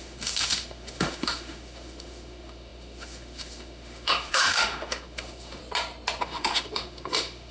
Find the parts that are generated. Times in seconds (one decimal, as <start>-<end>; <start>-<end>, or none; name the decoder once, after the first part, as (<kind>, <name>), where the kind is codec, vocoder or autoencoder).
0.0-5.6 (autoencoder, DAC-VAE); 6.2-7.5